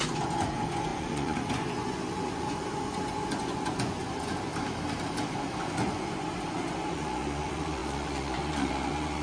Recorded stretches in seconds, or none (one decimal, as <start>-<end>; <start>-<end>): 4.5-5.3